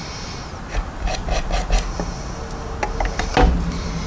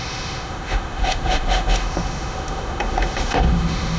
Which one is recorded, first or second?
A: first